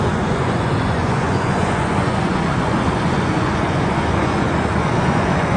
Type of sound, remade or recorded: remade